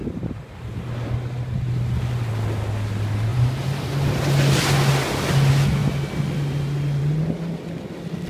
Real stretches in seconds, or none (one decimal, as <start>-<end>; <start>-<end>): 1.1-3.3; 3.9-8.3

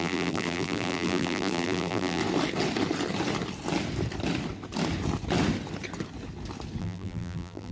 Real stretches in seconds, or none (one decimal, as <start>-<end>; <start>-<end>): 2.2-6.8

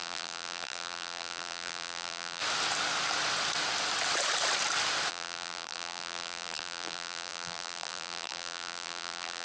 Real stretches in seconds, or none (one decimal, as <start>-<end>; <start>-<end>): 2.4-5.1